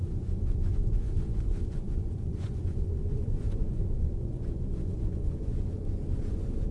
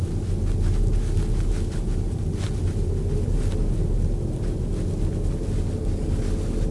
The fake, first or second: first